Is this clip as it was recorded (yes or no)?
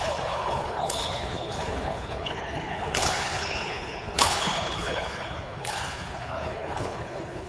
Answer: no